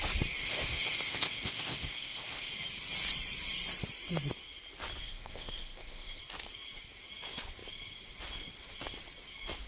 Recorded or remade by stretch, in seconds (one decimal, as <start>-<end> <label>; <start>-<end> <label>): 0.0-0.4 recorded; 0.4-2.5 remade; 2.5-5.0 recorded; 5.0-6.2 remade; 6.2-9.7 recorded